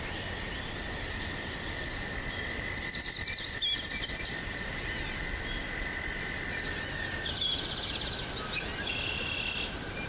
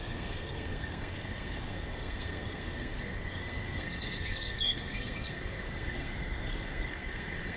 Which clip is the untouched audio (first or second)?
first